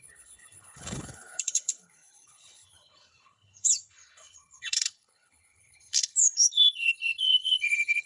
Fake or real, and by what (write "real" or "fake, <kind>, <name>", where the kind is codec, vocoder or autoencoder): fake, codec, HILCodec